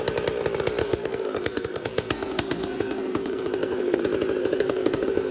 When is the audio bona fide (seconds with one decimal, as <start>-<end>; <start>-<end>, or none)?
0.0-0.8; 4.0-4.4